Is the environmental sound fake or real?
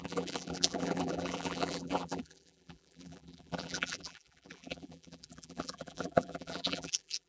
fake